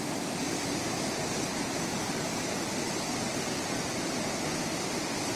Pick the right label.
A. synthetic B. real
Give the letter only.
B